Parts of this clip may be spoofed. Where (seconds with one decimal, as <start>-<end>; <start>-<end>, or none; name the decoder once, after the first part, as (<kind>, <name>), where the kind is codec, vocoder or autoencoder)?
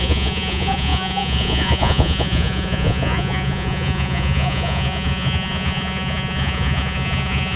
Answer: 0.0-7.6 (vocoder, Vocos)